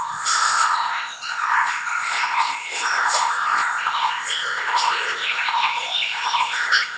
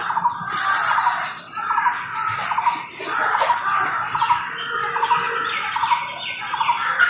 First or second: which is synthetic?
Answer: first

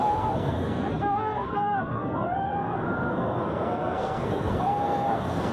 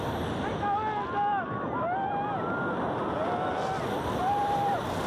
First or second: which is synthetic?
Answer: first